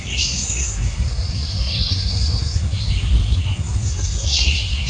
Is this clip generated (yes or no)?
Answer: yes